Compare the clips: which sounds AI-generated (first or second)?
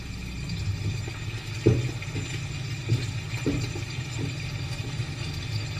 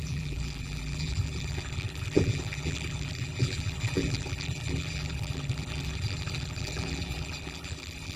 second